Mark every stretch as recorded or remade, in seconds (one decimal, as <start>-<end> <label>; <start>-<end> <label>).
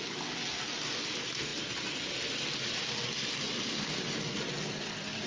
0.0-5.3 recorded